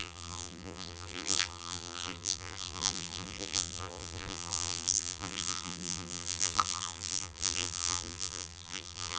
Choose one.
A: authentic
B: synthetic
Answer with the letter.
B